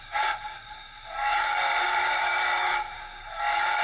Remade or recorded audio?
remade